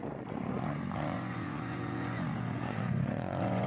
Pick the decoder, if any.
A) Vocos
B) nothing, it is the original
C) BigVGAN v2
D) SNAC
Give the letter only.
A